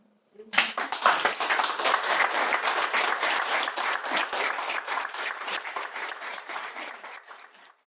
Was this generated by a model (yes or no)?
yes